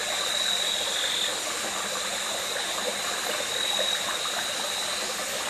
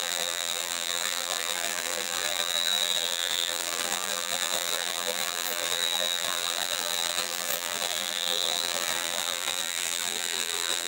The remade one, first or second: second